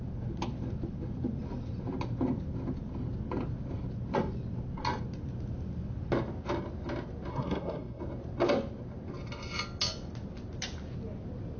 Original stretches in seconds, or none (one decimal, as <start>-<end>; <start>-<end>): 0.0-7.3; 8.0-11.6